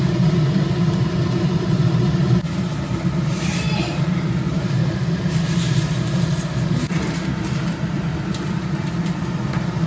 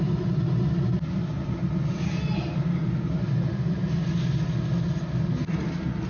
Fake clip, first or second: first